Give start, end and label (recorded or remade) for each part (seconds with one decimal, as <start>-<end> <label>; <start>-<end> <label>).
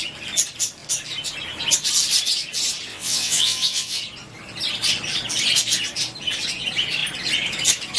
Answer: 0.0-2.9 recorded; 2.9-4.0 remade; 4.0-8.0 recorded